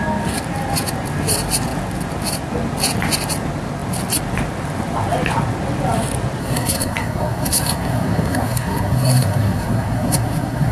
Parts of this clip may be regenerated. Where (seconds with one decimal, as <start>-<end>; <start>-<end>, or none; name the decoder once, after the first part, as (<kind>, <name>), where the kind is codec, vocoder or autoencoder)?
6.4-10.7 (codec, SNAC)